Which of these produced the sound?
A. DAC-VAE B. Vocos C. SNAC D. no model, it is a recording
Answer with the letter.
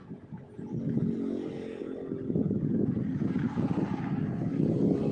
D